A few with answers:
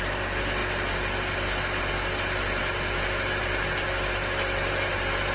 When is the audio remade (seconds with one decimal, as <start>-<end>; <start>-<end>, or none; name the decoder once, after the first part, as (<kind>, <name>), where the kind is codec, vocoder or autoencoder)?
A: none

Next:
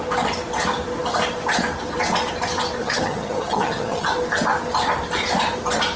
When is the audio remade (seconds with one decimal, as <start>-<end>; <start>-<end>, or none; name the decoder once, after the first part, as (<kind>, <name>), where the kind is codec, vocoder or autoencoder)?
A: 2.8-4.1 (vocoder, HiFi-GAN)

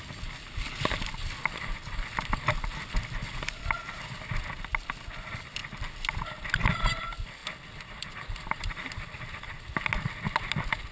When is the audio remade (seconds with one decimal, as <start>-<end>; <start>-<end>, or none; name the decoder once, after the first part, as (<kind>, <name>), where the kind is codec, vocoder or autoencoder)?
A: none

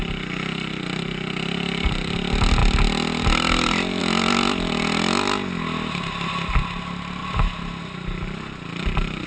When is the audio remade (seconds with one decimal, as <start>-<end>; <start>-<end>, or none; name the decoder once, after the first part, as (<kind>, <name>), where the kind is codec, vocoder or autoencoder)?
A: none